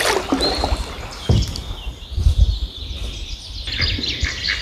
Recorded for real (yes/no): yes